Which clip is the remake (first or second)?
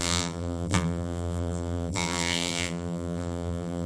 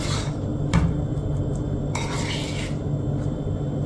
first